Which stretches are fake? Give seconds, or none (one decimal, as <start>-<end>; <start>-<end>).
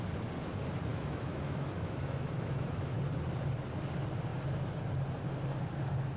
0.9-3.0